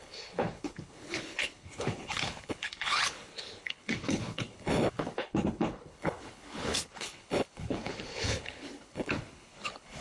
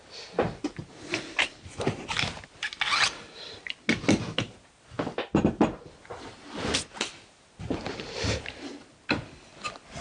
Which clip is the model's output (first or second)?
first